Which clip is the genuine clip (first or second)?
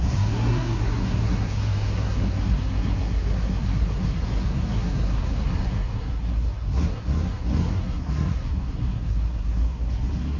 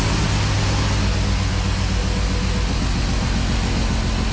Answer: second